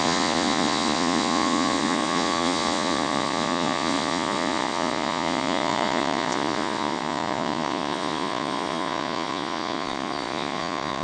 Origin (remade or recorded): remade